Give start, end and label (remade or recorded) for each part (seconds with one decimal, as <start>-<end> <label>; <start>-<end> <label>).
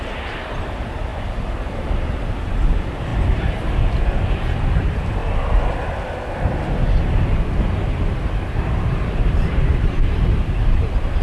0.0-5.2 remade; 5.2-7.6 recorded; 7.6-11.2 remade